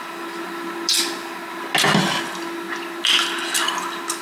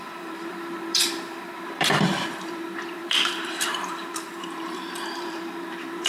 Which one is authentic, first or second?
first